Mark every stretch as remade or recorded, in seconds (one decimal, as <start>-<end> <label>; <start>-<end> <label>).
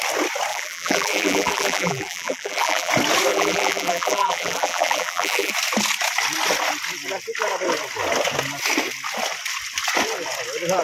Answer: 0.0-0.5 recorded; 0.5-2.9 remade; 2.9-3.3 recorded; 3.3-5.5 remade; 5.5-10.8 recorded